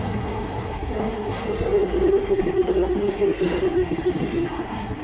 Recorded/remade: remade